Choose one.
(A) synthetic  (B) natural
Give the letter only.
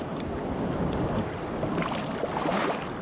B